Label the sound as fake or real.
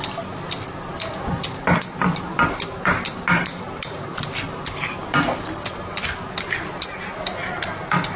real